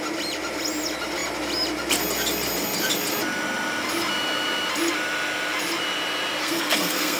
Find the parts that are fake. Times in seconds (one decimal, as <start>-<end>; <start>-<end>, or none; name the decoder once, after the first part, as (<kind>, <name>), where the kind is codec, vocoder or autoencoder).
6.4-7.2 (codec, SNAC)